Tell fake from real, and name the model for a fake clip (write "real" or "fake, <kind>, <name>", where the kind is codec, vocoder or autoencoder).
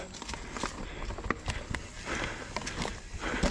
real